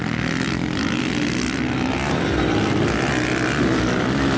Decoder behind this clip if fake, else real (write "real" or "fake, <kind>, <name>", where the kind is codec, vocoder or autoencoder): real